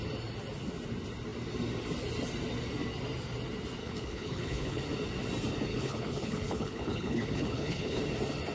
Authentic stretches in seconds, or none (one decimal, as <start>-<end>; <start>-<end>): 0.0-3.8; 4.8-5.7; 8.0-8.5